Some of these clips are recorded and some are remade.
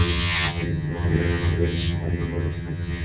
remade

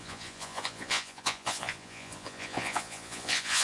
remade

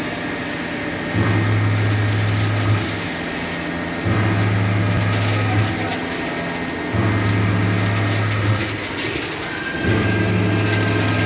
recorded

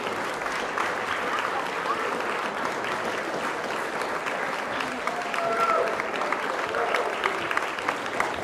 recorded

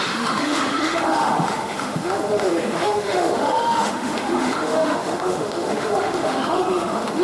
remade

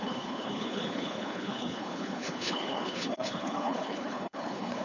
remade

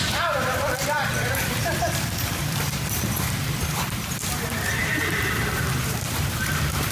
remade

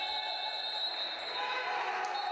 recorded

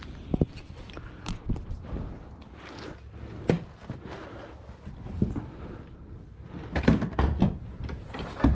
recorded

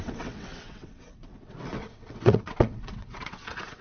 remade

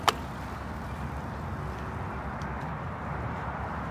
recorded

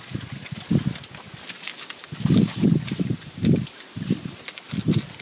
recorded